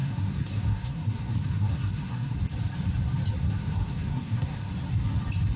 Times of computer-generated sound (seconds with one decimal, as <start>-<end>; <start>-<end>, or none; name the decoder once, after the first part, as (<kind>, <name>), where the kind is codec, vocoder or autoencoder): 0.0-2.4 (codec, SNAC); 3.4-4.7